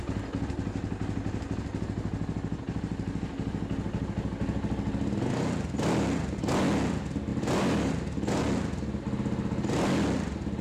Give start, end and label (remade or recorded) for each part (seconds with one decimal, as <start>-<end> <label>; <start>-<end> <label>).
0.0-7.3 recorded; 7.3-7.9 remade; 7.9-10.6 recorded